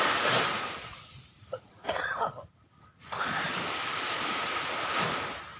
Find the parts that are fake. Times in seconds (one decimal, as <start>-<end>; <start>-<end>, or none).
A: 0.5-2.3